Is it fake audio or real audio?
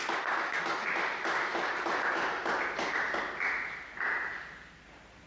real